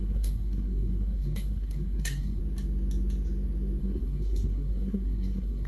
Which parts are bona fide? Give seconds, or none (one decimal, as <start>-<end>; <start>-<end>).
2.4-3.8

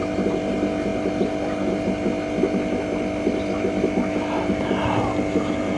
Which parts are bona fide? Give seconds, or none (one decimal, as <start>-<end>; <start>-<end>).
0.0-5.8

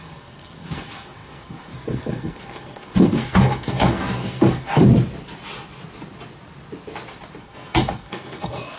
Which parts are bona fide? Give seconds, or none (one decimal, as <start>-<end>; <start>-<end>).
4.8-7.4